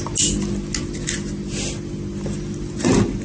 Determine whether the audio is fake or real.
real